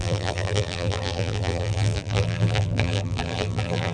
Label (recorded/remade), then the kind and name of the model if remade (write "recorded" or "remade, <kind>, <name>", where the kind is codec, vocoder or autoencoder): remade, vocoder, BigVGAN v2